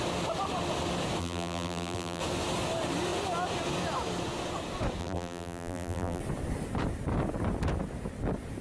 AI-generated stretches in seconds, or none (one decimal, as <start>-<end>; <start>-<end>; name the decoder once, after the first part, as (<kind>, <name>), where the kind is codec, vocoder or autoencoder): 1.2-2.2 (vocoder, BigVGAN v2); 5.0-6.2